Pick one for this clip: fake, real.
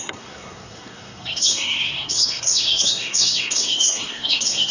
fake